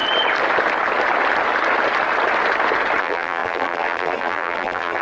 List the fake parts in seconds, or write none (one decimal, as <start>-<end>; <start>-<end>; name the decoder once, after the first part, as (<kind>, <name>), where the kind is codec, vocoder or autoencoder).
3.0-5.0 (vocoder, BigVGAN v2)